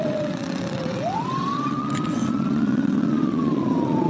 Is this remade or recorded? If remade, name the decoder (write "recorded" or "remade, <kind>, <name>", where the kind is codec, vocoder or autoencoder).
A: remade, vocoder, WaveNeXt